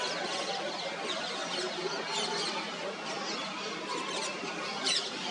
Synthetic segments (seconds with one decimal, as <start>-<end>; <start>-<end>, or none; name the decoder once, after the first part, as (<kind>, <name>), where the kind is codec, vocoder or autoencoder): 4.4-5.3 (vocoder, BigVGAN v2)